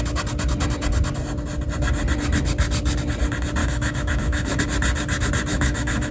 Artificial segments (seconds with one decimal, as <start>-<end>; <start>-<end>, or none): 3.6-4.6; 5.5-6.1